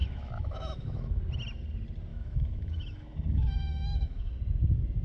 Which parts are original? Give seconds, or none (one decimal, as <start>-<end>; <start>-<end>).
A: 1.2-2.1; 4.3-5.0